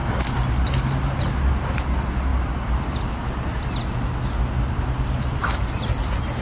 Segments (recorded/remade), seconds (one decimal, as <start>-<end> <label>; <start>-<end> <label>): 0.0-6.4 recorded